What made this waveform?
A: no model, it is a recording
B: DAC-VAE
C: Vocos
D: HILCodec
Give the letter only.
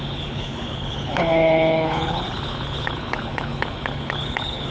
D